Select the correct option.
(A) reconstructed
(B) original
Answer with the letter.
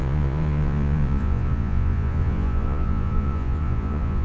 A